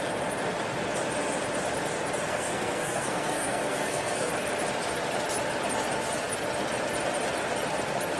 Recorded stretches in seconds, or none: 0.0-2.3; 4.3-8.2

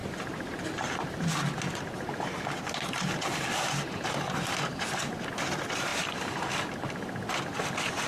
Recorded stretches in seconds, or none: 0.0-8.1

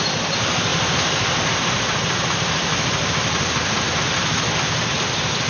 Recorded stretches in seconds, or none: 0.0-5.5

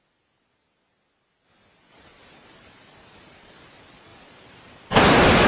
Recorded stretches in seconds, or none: 0.0-4.1

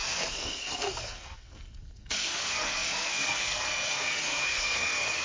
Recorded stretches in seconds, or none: none